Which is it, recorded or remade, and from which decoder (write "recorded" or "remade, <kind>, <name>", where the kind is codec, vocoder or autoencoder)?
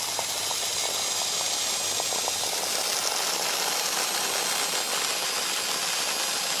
recorded